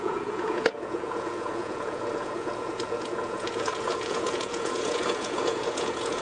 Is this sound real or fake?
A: fake